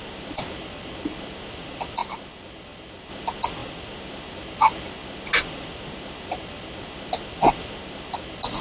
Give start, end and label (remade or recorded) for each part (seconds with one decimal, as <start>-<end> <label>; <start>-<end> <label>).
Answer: 0.0-8.6 recorded

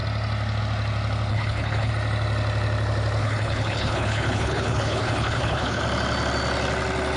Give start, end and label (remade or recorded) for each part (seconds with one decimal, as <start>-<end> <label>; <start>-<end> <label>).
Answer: 0.0-1.3 recorded; 1.3-1.9 remade; 1.9-3.2 recorded; 3.2-5.8 remade; 5.8-7.2 recorded

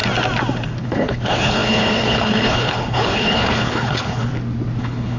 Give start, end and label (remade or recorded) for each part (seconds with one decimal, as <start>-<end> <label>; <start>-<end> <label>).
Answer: 0.0-0.8 recorded; 0.8-4.3 remade; 4.3-4.8 recorded; 4.8-5.2 remade

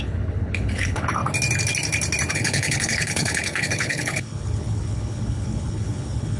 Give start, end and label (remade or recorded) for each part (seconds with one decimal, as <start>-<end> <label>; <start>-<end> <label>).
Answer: 0.0-1.2 remade; 1.2-2.3 recorded; 2.3-6.4 remade

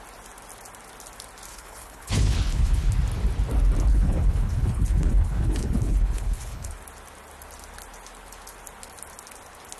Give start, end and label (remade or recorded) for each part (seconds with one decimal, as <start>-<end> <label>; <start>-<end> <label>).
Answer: 0.0-1.5 recorded; 1.5-2.9 remade; 2.9-3.9 recorded; 3.9-6.7 remade; 6.7-9.8 recorded